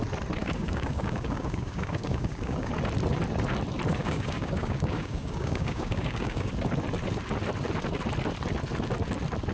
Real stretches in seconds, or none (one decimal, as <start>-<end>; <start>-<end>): 0.0-0.4; 2.7-3.9; 6.5-9.5